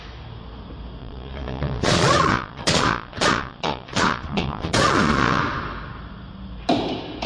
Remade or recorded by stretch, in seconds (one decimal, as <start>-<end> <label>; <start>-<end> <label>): 0.0-1.0 recorded; 1.0-5.4 remade; 5.4-7.3 recorded